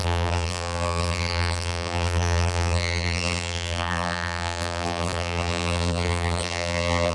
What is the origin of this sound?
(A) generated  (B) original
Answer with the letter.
A